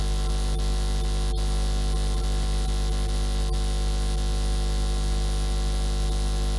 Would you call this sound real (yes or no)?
yes